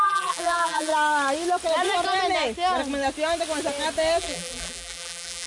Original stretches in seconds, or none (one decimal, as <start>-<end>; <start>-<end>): 0.9-4.2